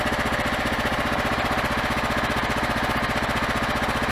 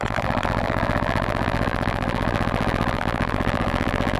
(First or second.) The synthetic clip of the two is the second